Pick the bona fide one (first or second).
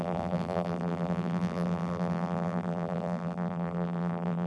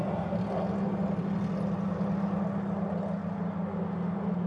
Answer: second